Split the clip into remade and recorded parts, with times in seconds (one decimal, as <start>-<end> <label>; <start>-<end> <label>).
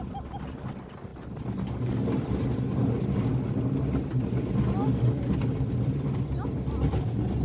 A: 0.0-7.4 recorded